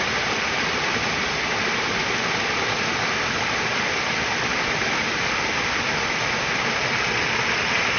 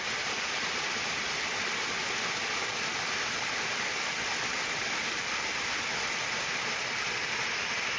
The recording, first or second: first